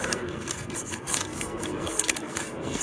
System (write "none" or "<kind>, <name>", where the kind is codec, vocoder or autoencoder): codec, SNAC